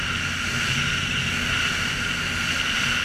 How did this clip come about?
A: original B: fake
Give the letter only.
A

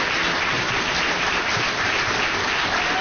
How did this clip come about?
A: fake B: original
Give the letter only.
B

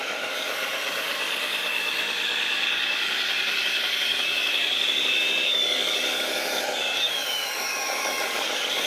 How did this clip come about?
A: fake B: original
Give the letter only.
A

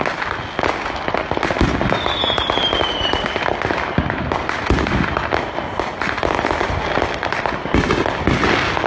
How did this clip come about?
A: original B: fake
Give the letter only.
A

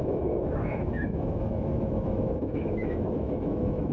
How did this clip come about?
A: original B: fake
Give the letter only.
B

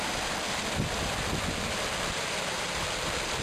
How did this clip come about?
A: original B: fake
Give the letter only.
A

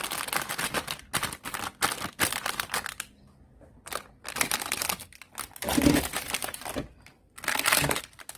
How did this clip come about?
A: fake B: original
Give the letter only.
B